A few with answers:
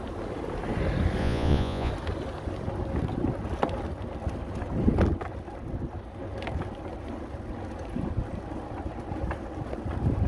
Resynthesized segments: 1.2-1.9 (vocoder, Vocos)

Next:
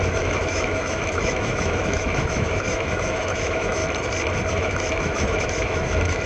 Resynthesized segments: 0.0-3.8 (autoencoder, DAC-VAE); 4.5-6.3

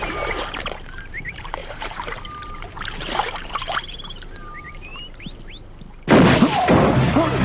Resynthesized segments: 0.0-4.9 (vocoder, BigVGAN v2)

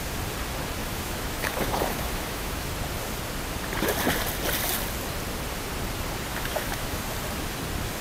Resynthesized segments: 0.8-2.7 (autoencoder, DAC-VAE); 6.3-7.0

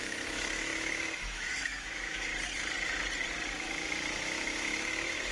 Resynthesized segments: 0.0-2.3 (autoencoder, DAC-VAE); 3.6-5.3